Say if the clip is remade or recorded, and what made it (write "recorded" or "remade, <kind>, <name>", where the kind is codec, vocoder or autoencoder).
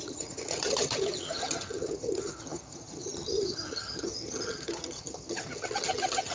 remade, vocoder, HiFi-GAN